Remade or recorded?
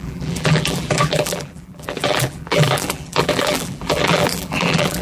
remade